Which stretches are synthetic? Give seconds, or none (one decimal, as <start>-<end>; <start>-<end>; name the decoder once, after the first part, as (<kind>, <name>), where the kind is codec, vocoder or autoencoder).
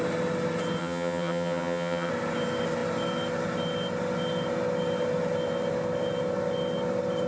0.8-2.1 (vocoder, HiFi-GAN)